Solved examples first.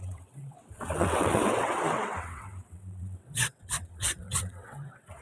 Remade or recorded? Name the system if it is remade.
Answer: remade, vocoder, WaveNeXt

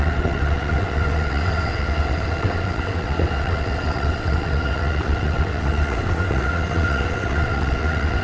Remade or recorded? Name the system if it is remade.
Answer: remade, vocoder, WaveNeXt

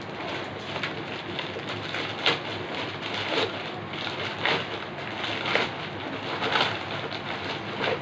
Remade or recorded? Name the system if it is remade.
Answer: recorded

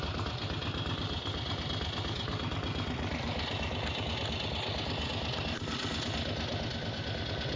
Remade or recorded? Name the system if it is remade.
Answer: recorded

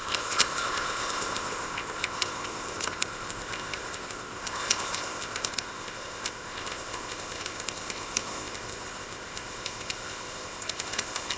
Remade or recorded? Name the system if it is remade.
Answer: remade, codec, ZipCodec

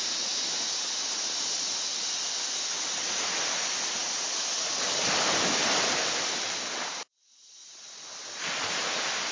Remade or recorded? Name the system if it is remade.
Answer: recorded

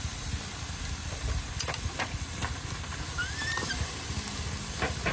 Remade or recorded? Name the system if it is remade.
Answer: recorded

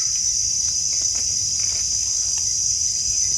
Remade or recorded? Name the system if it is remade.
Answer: recorded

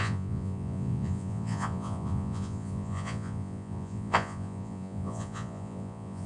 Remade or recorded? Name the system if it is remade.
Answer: remade, vocoder, Vocos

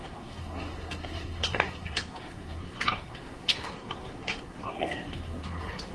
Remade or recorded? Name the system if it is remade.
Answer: remade, codec, SNAC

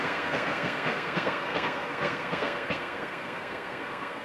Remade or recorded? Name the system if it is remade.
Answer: remade, codec, SNAC